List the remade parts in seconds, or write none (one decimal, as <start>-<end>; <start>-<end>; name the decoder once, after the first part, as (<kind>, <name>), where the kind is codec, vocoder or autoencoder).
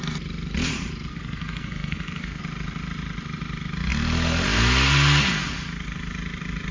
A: 1.1-2.4 (codec, SNAC)